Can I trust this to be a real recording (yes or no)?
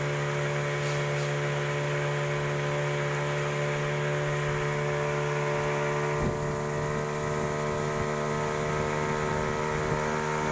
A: yes